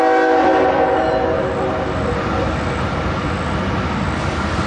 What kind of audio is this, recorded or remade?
recorded